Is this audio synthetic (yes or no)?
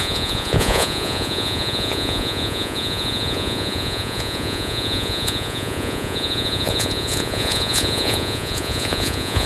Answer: yes